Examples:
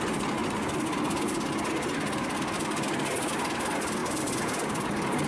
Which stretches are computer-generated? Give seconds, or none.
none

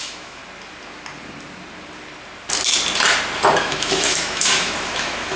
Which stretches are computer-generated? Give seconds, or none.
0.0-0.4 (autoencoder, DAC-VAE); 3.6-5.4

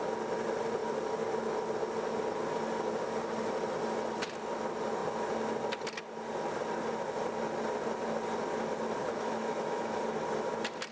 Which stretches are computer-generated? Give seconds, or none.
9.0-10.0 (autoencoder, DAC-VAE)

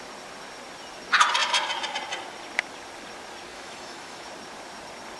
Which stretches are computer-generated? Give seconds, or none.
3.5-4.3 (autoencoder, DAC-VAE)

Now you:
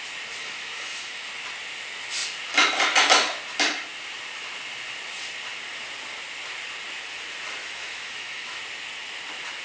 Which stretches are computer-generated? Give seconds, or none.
0.4-1.3 (autoencoder, DAC-VAE); 7.6-8.6